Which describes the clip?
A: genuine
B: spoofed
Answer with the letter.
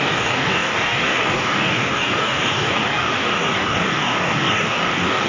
B